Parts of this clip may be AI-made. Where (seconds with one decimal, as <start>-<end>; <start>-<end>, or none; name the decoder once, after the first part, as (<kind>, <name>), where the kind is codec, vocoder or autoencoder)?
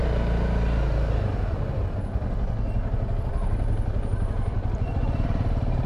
3.3-5.9 (vocoder, BigVGAN v2)